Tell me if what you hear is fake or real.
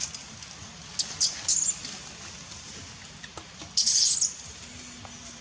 real